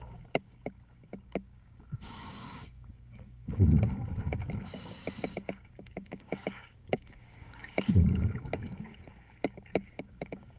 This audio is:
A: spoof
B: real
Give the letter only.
A